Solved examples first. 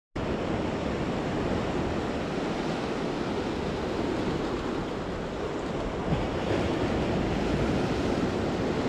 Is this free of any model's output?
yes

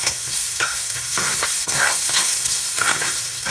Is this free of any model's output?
no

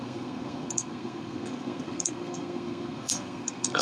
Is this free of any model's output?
no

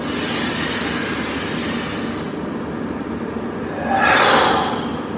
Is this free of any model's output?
yes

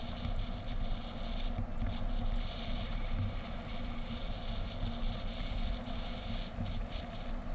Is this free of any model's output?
yes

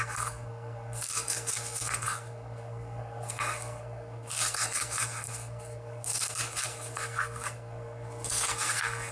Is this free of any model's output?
no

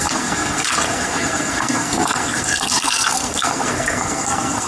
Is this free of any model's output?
no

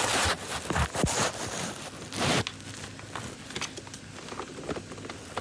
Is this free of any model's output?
yes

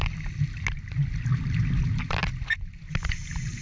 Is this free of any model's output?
yes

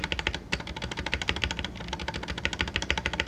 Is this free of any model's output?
yes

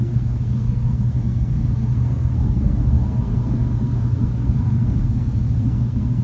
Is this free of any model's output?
no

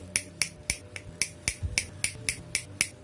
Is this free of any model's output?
yes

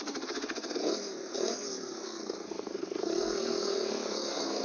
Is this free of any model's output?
no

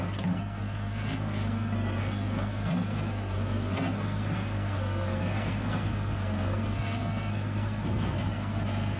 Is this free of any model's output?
no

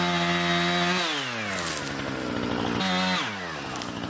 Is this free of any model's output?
yes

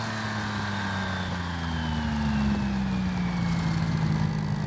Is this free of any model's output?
yes